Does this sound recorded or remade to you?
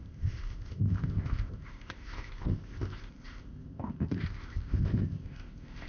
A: remade